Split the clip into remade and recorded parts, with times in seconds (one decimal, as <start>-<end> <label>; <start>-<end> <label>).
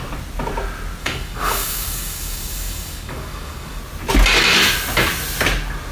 0.0-1.0 recorded; 1.0-3.8 remade; 3.8-5.9 recorded